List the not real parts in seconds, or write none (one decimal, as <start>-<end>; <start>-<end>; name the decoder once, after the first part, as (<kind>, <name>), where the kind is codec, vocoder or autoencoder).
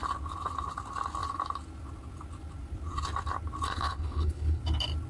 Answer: 3.7-4.6 (codec, HILCodec)